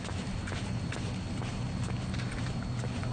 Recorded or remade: recorded